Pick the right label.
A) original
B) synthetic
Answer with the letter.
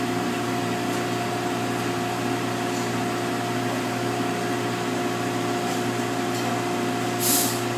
A